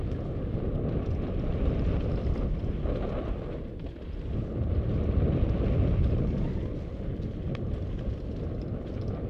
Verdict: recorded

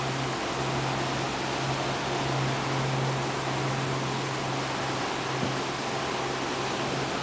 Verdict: recorded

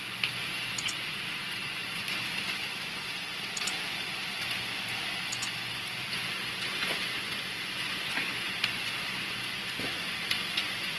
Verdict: remade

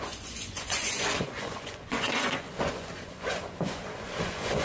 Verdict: remade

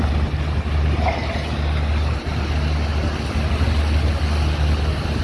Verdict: recorded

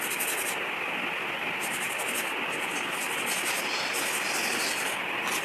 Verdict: recorded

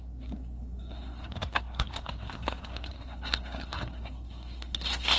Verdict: remade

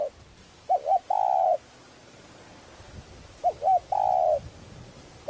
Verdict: recorded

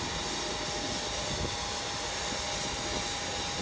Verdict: recorded